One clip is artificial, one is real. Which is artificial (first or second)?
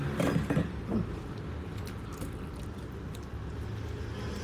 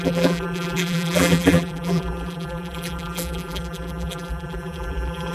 second